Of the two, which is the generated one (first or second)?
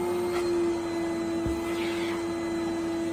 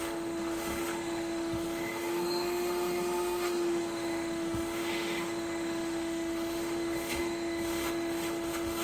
second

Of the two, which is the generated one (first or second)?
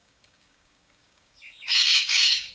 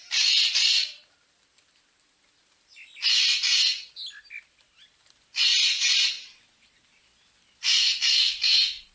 first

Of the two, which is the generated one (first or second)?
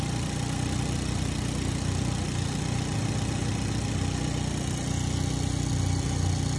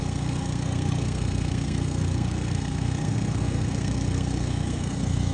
second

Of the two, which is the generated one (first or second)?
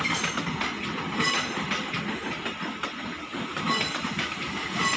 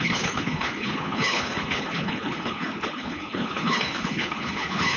second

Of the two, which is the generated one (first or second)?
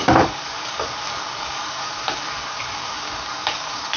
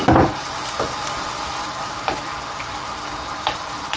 first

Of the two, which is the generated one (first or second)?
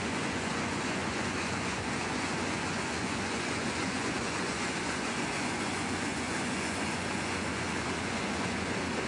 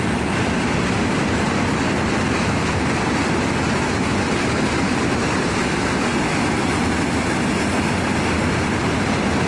first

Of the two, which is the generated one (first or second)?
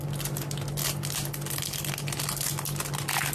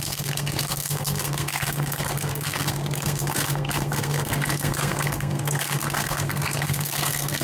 second